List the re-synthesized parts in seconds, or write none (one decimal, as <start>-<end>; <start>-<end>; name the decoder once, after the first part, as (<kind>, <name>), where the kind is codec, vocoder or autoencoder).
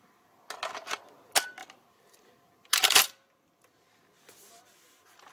none